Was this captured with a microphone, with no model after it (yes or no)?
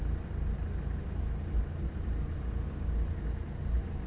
yes